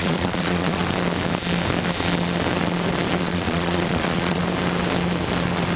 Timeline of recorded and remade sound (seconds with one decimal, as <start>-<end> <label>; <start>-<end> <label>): 0.0-0.8 remade; 0.8-3.2 recorded; 3.2-4.4 remade; 4.4-5.8 recorded